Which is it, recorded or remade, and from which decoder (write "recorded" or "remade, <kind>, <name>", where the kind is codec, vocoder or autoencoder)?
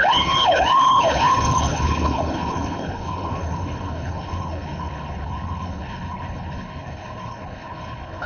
remade, codec, HILCodec